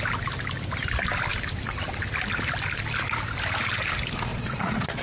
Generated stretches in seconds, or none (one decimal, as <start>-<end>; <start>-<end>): 4.3-5.0

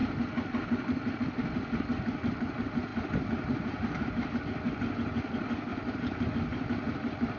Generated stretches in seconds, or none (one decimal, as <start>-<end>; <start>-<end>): 2.9-4.4; 5.7-6.3